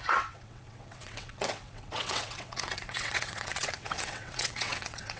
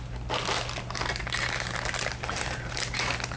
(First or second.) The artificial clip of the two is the first